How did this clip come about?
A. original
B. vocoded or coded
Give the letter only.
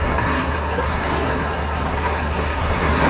B